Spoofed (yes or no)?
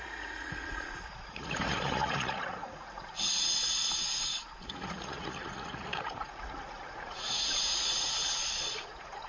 yes